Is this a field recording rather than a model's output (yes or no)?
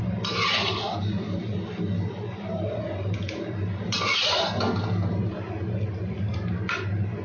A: yes